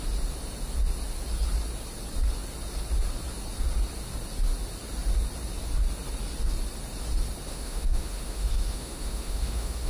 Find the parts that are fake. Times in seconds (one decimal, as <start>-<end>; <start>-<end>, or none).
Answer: 7.5-9.9